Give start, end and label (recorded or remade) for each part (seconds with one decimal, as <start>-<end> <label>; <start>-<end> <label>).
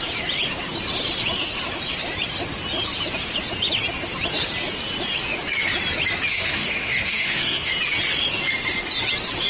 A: 0.0-6.3 recorded; 6.3-7.7 remade; 7.7-9.5 recorded